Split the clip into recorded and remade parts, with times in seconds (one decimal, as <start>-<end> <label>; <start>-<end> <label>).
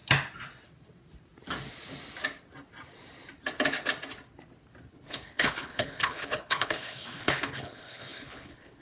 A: 0.0-4.9 recorded; 4.9-8.8 remade